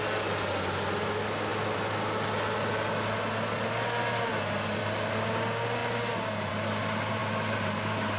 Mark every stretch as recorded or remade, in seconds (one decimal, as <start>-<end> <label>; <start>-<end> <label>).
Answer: 0.0-8.2 recorded